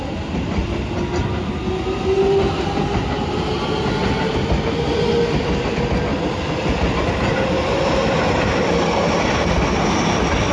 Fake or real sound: real